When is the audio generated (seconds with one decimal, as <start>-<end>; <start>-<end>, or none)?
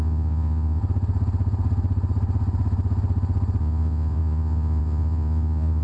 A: 0.0-0.8; 3.6-5.8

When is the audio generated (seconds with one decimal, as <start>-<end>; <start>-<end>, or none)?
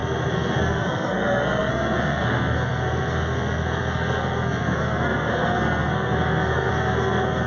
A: 0.0-7.5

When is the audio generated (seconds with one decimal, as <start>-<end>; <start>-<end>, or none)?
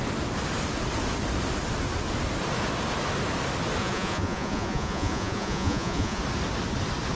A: 3.8-6.2